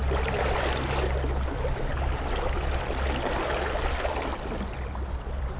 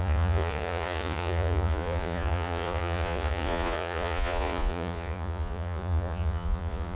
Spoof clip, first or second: second